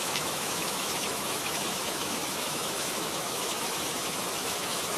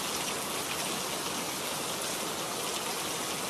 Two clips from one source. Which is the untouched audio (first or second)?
second